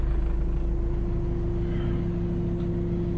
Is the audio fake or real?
real